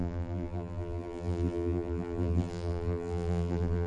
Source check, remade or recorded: remade